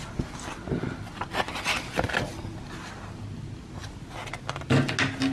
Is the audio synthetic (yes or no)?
no